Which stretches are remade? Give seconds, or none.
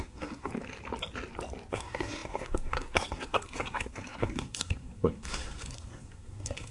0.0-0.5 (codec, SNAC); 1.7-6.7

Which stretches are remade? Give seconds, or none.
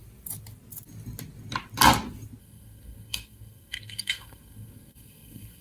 2.4-5.6 (codec, SNAC)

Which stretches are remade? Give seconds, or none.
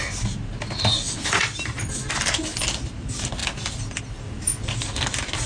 none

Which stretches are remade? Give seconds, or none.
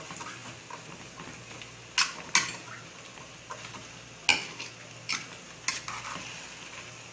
none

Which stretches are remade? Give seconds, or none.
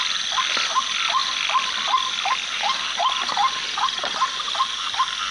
none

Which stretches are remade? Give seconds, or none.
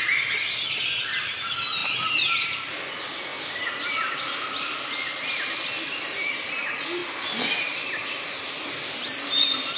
1.8-2.9 (vocoder, BigVGAN v2)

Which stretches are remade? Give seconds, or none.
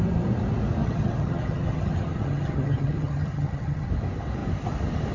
0.8-3.9 (vocoder, HiFi-GAN)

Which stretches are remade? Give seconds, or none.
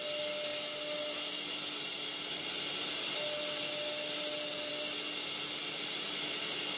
none